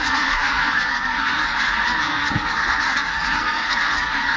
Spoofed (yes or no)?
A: yes